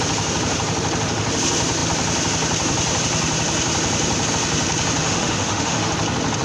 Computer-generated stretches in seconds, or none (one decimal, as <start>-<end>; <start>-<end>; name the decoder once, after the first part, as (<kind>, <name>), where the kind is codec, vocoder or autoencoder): 5.0-5.9 (autoencoder, DAC-VAE)